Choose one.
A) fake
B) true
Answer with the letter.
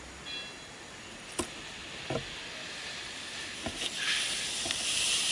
B